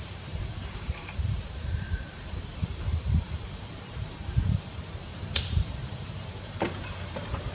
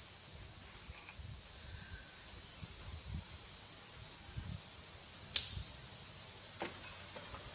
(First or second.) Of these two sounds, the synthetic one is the first